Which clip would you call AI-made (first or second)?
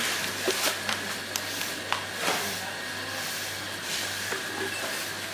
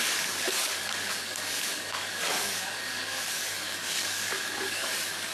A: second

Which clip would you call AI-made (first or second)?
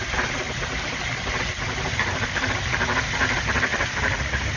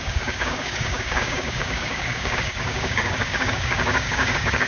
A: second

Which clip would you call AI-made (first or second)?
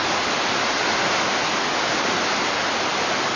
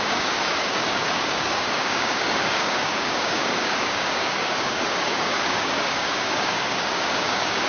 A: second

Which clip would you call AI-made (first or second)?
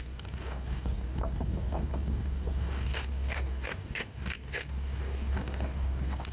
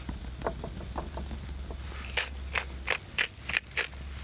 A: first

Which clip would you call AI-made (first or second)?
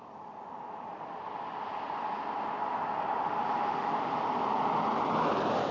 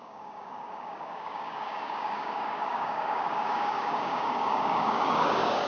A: second